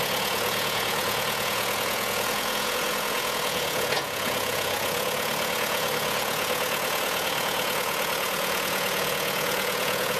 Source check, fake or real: fake